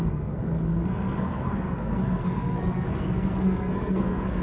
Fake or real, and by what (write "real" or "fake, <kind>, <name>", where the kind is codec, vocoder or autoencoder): fake, codec, SNAC